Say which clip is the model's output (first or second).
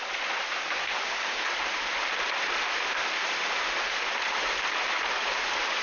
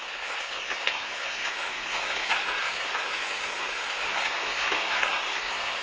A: second